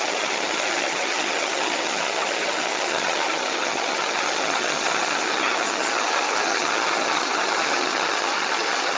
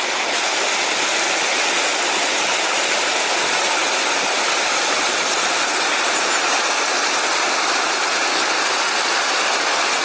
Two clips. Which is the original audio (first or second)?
second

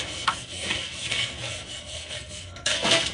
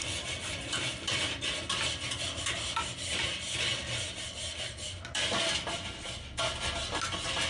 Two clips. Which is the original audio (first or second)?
second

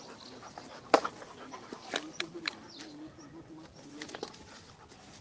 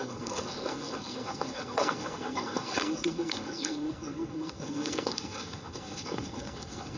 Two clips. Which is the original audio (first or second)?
first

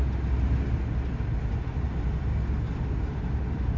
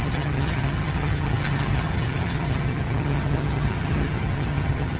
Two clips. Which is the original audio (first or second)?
first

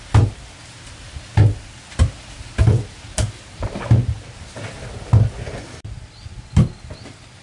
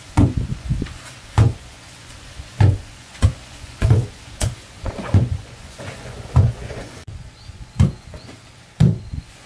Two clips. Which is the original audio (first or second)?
first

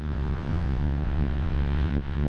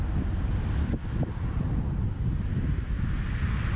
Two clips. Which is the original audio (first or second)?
second